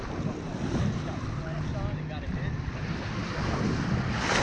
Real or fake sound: real